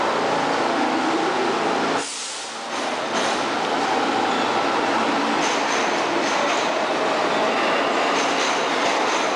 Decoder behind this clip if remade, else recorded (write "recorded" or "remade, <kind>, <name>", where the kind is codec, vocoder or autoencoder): recorded